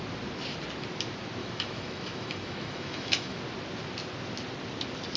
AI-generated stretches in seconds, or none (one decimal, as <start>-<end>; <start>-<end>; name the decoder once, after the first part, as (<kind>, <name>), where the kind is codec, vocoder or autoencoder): 1.4-3.4 (autoencoder, DAC-VAE)